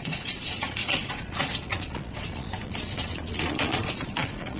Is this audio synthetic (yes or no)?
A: yes